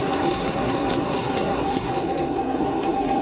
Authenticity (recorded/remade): remade